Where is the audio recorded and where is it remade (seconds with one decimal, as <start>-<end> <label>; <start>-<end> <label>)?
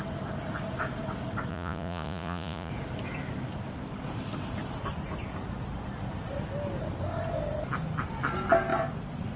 0.0-1.5 recorded; 1.5-2.7 remade; 2.7-9.4 recorded